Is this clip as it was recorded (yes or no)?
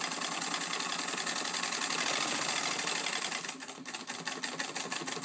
yes